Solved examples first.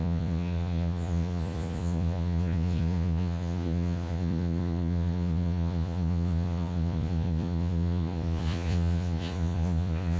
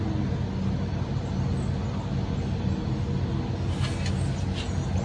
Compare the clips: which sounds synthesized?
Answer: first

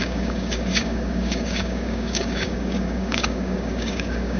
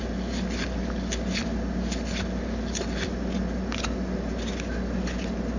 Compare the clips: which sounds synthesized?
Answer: first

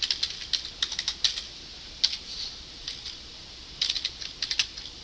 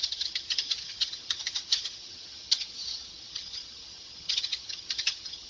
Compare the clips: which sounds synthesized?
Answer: second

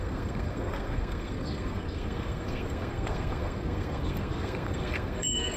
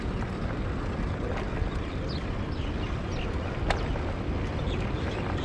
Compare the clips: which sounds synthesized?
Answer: first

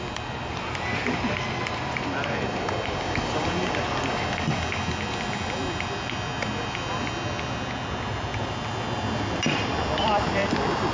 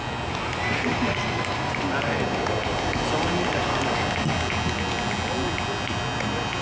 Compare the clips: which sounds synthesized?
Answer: first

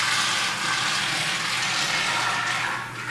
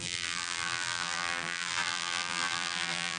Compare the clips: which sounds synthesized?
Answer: second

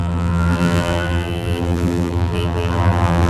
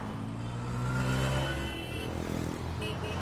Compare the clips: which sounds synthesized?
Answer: first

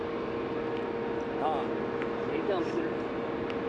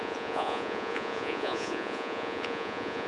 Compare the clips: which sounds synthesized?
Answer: second